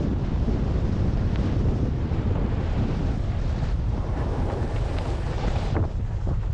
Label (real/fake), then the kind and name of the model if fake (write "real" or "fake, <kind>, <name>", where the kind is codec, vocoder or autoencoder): fake, vocoder, BigVGAN v2